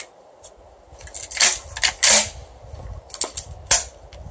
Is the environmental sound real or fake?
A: real